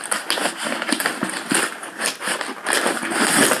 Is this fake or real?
real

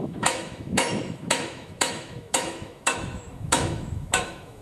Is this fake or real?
fake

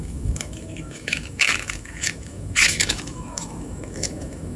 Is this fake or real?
fake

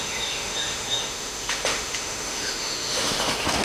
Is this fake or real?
fake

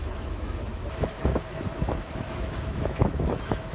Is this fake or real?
fake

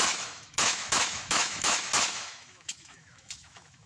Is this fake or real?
fake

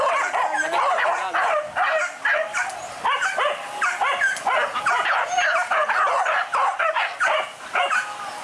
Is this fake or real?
real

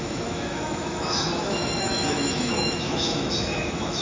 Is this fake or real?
fake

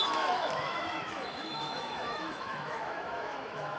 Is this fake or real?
fake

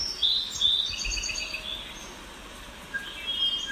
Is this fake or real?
real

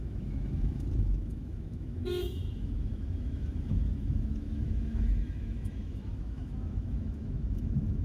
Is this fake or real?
fake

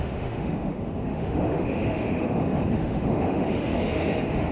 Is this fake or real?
fake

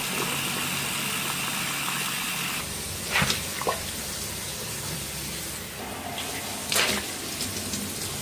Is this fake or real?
real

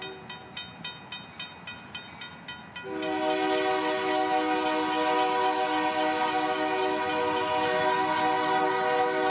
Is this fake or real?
real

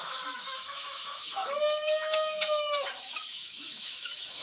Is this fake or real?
fake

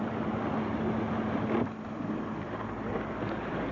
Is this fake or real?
real